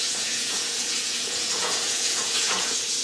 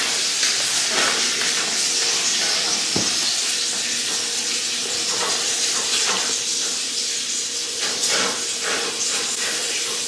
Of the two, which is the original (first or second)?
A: second